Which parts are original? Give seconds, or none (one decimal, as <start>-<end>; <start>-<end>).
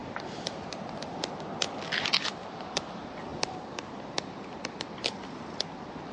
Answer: 0.8-2.4; 2.9-3.3; 4.9-6.1